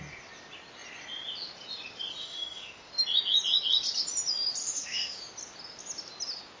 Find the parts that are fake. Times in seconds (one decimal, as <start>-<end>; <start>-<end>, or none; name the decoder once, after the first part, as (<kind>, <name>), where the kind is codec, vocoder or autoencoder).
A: 2.2-2.9 (autoencoder, DAC-VAE); 4.6-5.2